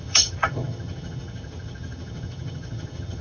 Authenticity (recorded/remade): remade